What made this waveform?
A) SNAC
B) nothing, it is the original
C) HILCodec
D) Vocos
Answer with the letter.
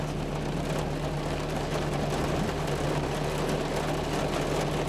B